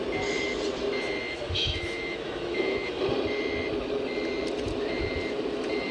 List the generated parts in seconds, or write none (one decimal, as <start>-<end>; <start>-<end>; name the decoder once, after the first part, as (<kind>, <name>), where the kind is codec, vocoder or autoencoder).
1.2-2.9 (autoencoder, DAC-VAE)